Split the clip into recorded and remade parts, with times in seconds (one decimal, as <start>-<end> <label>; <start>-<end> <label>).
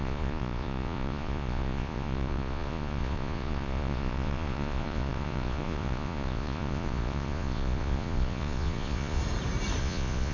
0.0-9.2 remade; 9.2-9.8 recorded; 9.8-10.3 remade